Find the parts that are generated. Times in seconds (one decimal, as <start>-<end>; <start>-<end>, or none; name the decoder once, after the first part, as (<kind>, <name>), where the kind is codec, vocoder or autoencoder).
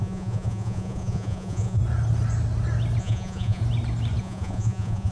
0.0-1.8 (vocoder, Vocos); 3.0-3.6; 4.2-5.1